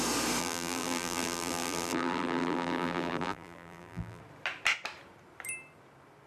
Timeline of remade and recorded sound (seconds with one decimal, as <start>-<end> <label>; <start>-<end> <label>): 0.0-0.4 recorded; 0.4-4.2 remade; 4.2-6.3 recorded